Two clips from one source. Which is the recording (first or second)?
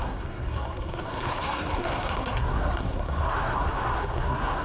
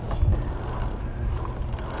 second